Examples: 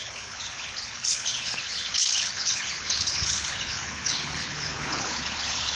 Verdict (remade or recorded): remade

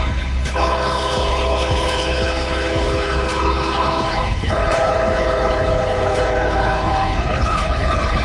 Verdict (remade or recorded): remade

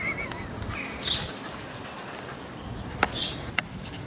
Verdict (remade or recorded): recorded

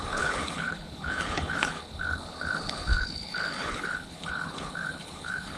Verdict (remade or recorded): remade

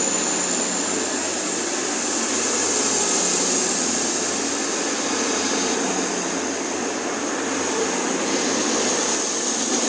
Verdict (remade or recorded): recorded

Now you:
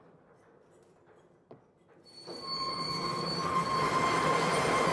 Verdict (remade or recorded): recorded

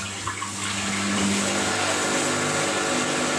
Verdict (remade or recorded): recorded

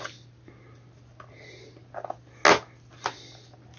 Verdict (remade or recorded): recorded